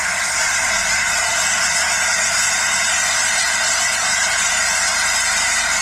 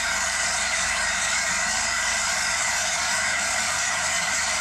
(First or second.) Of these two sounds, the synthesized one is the second